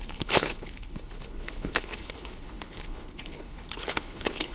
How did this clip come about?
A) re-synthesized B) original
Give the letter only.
A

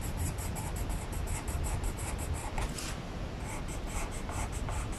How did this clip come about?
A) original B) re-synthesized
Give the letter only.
A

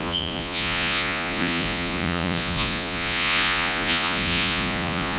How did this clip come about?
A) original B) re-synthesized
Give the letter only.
B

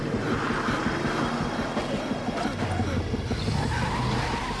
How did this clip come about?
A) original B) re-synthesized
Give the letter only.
A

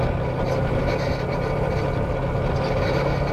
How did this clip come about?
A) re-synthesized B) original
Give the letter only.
B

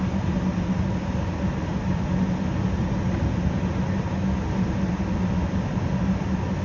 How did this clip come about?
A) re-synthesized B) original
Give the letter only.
B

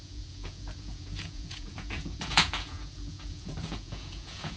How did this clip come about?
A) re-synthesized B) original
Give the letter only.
A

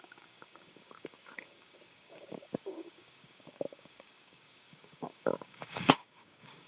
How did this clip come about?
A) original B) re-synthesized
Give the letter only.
B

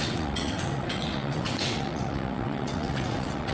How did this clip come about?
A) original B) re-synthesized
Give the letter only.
B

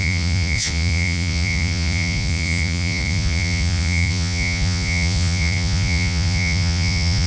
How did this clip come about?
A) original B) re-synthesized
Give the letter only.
B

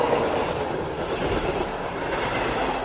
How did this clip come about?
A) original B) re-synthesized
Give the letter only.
A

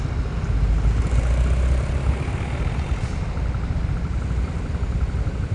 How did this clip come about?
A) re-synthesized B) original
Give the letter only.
B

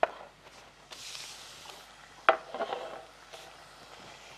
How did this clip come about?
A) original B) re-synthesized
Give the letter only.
A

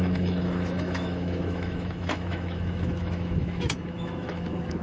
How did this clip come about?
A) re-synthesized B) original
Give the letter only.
A